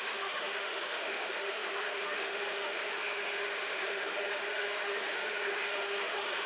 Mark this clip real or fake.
fake